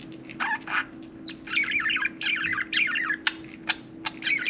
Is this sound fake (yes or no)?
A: no